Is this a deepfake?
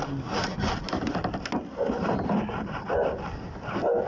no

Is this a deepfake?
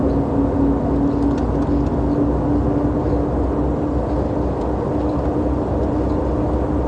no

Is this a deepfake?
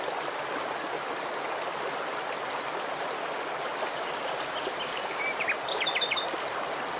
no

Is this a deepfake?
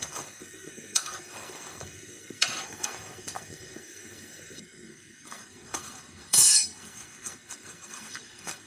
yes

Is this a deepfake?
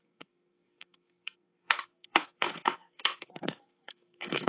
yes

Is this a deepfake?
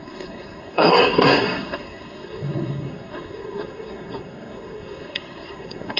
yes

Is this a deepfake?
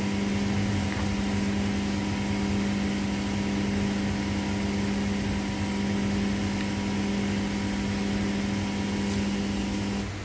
no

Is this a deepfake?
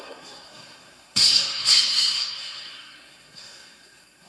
yes